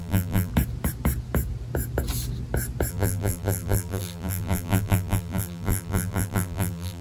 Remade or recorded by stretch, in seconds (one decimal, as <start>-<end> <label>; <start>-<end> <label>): 0.0-0.5 remade; 0.5-2.9 recorded; 2.9-7.0 remade